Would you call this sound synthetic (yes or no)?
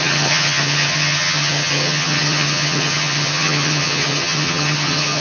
yes